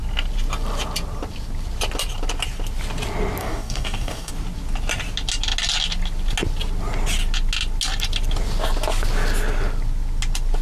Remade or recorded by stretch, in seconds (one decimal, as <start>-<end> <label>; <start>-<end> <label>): 0.0-3.4 recorded; 3.4-4.3 remade; 4.3-10.6 recorded

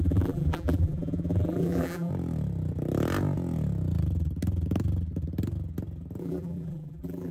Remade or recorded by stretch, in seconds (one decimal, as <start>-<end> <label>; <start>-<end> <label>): 0.0-2.1 remade; 2.1-6.2 recorded; 6.2-7.3 remade

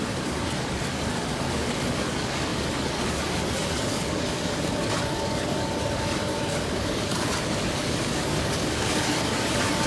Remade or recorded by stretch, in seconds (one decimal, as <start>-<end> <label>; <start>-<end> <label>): 0.0-9.9 remade

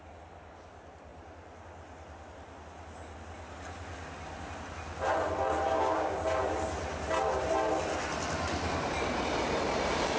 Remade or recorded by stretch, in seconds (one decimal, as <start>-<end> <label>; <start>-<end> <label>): 0.0-5.7 recorded; 5.7-6.2 remade; 6.2-10.2 recorded

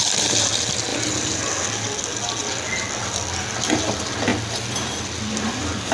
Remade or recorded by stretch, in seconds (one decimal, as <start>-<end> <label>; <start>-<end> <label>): 0.0-5.9 recorded